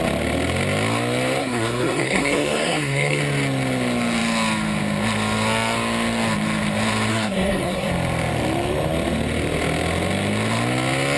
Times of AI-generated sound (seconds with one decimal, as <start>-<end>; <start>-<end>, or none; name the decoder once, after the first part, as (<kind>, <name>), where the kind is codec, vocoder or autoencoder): 1.4-3.2 (codec, SNAC); 7.1-7.9